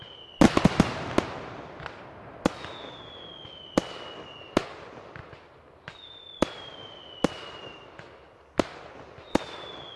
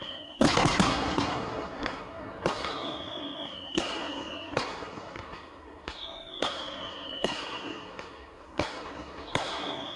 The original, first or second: first